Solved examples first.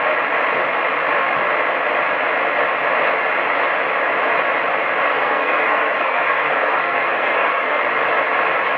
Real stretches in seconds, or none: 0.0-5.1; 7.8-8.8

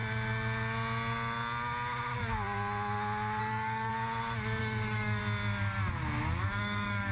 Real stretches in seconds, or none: 0.0-3.4; 3.9-4.6; 5.2-6.4

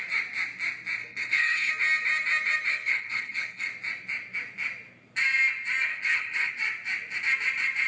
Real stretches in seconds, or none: 0.0-1.0; 1.7-2.7; 3.7-5.9; 6.5-7.9